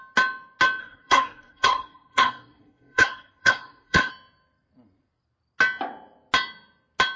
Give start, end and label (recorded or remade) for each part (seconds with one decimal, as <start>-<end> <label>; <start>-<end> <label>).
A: 0.0-0.8 recorded; 0.8-4.1 remade; 4.1-7.2 recorded